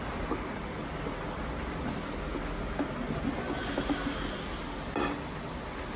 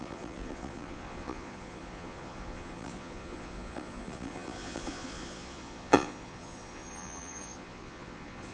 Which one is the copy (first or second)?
second